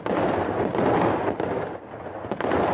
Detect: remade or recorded recorded